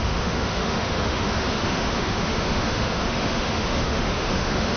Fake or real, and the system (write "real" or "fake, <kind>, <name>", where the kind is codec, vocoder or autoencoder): fake, autoencoder, DAC-VAE